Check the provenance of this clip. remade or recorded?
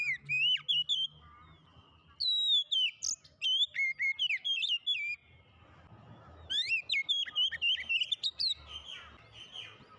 recorded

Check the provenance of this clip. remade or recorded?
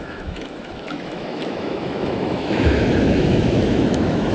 remade